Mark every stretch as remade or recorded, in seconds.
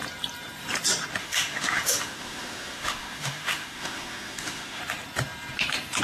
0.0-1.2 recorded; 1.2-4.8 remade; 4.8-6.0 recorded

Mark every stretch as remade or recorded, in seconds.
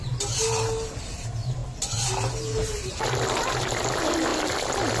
0.0-5.0 recorded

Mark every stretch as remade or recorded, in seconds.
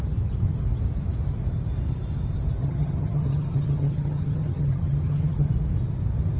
0.0-2.6 recorded; 2.6-5.5 remade; 5.5-6.4 recorded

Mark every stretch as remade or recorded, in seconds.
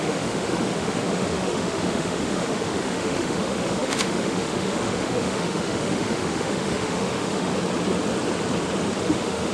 0.0-7.5 remade; 7.5-9.0 recorded; 9.0-9.5 remade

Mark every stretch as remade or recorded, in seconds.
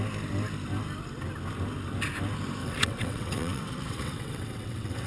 0.0-2.6 recorded; 2.6-5.1 remade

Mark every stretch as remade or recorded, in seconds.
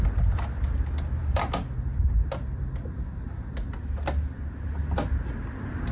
0.0-5.9 recorded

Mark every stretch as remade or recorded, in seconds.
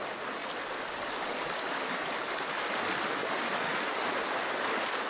0.0-5.1 recorded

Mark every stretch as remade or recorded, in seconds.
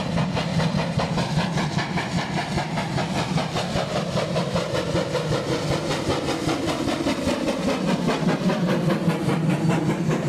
0.0-0.5 recorded; 0.5-5.3 remade; 5.3-10.3 recorded